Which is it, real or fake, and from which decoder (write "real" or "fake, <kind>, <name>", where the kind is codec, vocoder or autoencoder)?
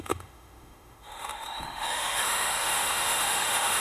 fake, autoencoder, DAC-VAE